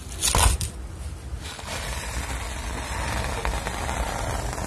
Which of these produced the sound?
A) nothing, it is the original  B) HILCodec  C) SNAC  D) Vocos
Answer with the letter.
A